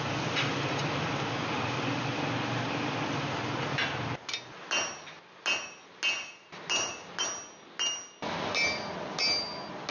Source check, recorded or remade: recorded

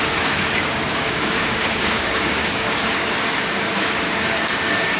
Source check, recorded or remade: remade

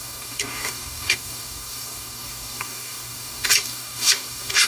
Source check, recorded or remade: remade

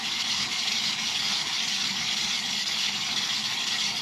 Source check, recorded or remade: remade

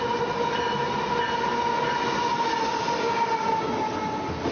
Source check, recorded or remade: recorded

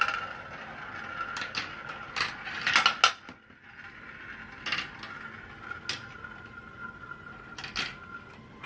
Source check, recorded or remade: recorded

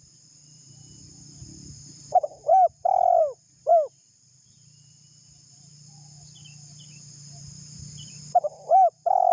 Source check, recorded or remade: recorded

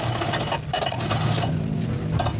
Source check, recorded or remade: recorded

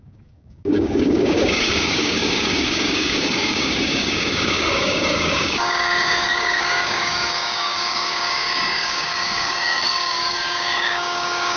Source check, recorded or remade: remade